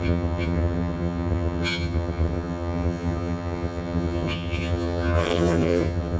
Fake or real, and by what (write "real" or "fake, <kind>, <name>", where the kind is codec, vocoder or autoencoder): fake, vocoder, HiFi-GAN